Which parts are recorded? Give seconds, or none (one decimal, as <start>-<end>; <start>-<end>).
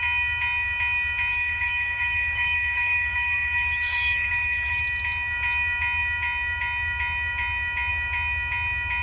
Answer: 0.0-1.3; 4.8-9.0